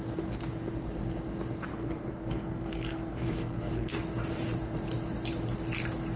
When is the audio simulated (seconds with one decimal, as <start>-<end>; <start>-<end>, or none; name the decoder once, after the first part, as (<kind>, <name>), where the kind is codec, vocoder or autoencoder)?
1.7-3.9 (codec, SNAC)